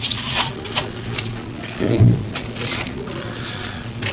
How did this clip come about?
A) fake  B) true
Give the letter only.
A